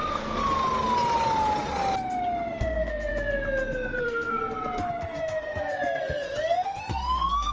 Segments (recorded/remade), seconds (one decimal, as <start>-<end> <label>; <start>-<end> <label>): 0.0-0.4 remade; 0.4-2.6 recorded; 2.6-3.1 remade; 3.1-4.0 recorded; 4.0-4.4 remade; 4.4-4.9 recorded; 4.9-7.5 remade